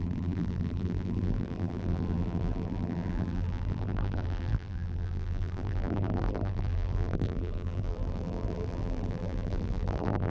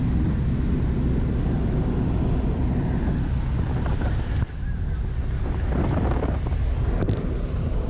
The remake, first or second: first